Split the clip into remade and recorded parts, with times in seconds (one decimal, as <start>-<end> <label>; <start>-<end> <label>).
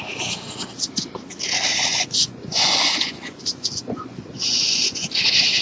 0.0-1.7 recorded; 1.7-5.1 remade; 5.1-5.6 recorded